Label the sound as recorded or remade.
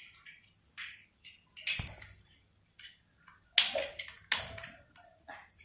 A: recorded